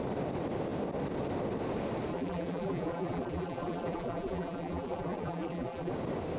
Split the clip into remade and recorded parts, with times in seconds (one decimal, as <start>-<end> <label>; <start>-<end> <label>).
0.0-2.1 recorded; 2.1-5.9 remade; 5.9-6.4 recorded